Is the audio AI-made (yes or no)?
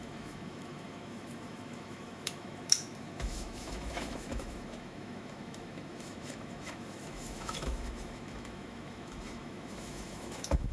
yes